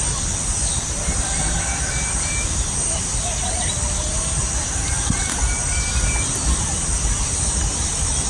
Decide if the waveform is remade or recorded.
recorded